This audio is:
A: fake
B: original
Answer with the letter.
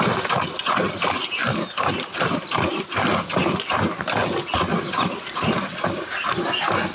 B